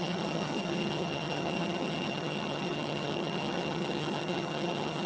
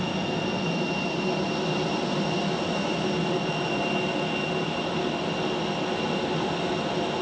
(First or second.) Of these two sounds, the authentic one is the second